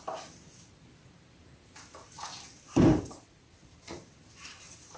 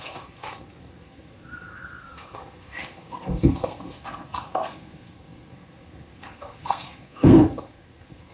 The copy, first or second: second